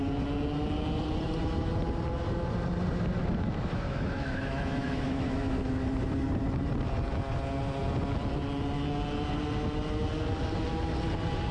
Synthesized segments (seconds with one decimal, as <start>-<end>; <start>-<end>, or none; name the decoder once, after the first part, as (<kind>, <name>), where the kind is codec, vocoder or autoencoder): 3.2-5.7 (autoencoder, DAC-VAE)